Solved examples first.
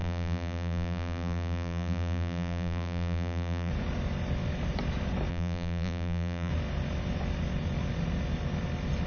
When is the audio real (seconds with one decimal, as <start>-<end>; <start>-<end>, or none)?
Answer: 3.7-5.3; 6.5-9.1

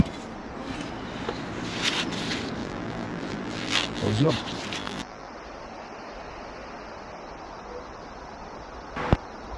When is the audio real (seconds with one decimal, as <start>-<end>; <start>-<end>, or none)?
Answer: 0.0-2.6; 4.3-4.8; 5.3-9.6

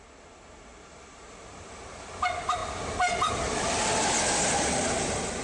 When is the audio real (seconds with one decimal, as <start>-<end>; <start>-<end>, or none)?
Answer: 0.0-0.7; 1.7-5.4

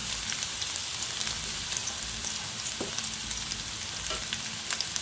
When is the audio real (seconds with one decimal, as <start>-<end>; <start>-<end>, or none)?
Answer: 3.0-5.0